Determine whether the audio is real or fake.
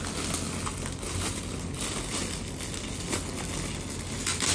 real